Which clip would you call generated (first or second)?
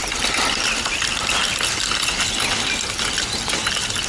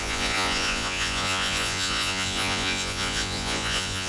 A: second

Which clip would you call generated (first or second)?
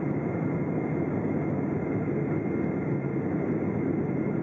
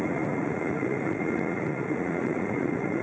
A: second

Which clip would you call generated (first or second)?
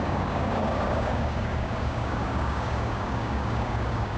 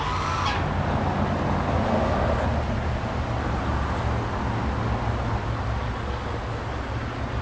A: first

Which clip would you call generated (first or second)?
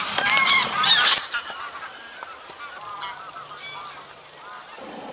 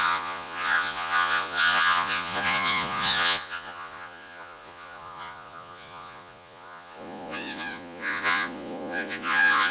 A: second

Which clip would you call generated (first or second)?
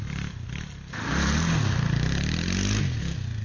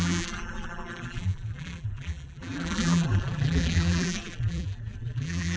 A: second